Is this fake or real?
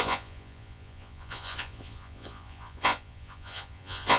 fake